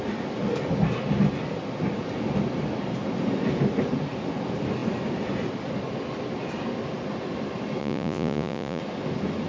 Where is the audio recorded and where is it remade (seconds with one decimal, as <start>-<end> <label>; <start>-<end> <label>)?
0.0-7.8 recorded; 7.8-8.8 remade; 8.8-9.5 recorded